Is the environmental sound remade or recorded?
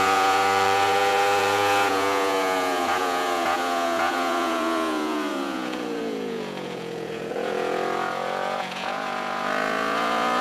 remade